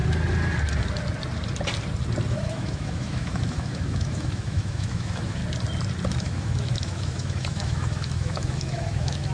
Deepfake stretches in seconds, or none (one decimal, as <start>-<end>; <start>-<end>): 2.3-5.4; 6.1-9.3